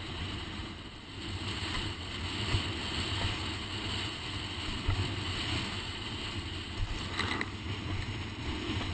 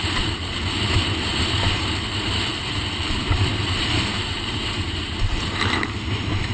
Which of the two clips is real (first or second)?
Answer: first